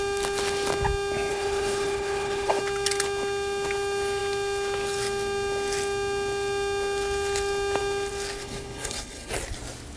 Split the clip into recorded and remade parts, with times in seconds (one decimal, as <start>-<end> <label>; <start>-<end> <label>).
0.0-1.3 recorded; 1.3-2.6 remade; 2.6-8.4 recorded; 8.4-9.3 remade; 9.3-10.0 recorded